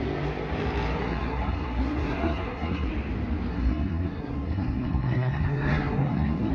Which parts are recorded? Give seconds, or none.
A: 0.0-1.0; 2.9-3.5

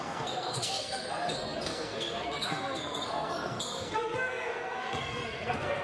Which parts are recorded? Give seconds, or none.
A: none

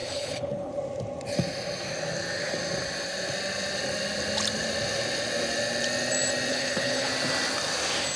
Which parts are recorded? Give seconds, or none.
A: 0.7-6.5; 7.1-8.2

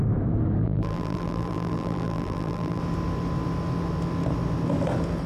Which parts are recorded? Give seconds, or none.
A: 0.0-0.6; 2.8-5.3

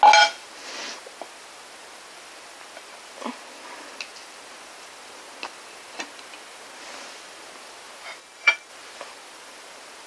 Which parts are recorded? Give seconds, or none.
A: 0.0-8.2; 8.7-10.1

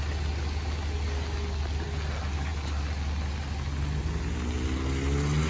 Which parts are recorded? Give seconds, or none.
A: 0.0-5.5

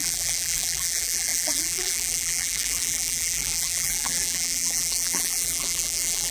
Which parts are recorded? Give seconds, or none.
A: none